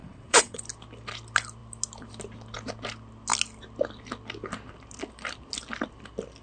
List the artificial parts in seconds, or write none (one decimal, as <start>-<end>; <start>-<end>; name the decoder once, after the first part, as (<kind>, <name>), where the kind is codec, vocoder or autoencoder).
0.0-0.6 (vocoder, WaveNeXt)